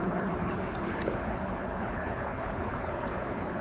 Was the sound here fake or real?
fake